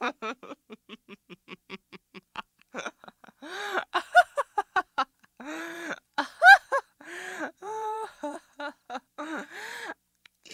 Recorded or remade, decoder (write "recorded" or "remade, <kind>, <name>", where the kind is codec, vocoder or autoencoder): remade, vocoder, BigVGAN v2